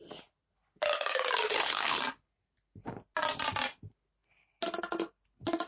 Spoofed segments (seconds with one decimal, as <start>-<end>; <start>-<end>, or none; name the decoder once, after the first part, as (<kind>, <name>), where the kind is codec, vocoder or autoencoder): 1.5-2.0 (codec, HILCodec)